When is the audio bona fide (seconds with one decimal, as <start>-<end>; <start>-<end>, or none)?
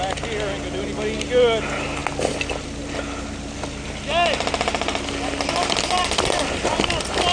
0.0-7.3